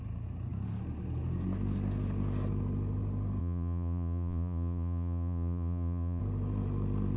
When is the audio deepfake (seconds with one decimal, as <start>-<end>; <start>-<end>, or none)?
3.4-6.2